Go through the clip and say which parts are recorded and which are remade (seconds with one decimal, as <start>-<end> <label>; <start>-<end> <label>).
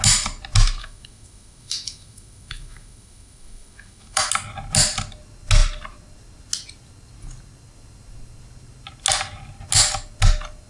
0.0-0.8 recorded; 0.8-4.3 remade; 4.3-10.7 recorded